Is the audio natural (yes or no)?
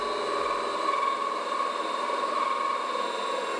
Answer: yes